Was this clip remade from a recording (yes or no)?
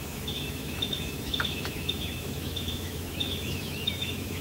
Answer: yes